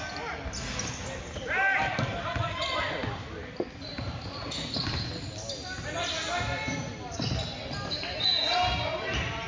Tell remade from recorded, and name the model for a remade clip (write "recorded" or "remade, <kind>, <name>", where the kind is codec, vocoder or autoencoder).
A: recorded